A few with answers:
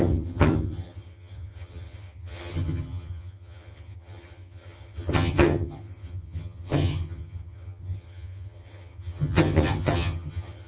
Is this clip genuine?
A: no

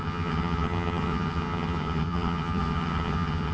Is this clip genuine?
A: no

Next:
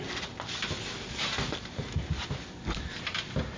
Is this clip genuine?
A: yes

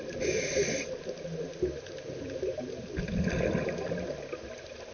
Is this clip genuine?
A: yes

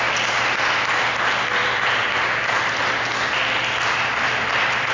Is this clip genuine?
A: yes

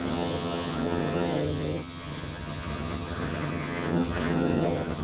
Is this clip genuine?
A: no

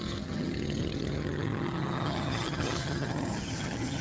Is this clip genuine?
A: no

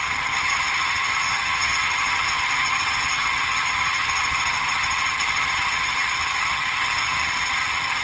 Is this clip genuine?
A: no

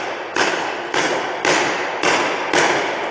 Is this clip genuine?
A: yes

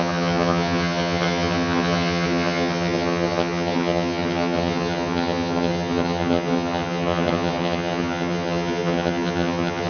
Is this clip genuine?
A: no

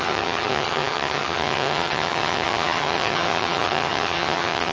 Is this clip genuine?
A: no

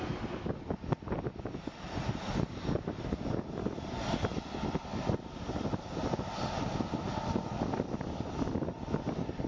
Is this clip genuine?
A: yes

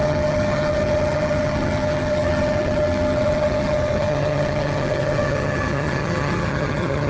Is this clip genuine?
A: no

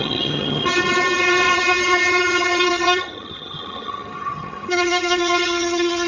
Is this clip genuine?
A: no